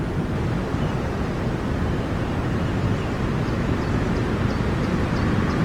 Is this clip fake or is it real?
real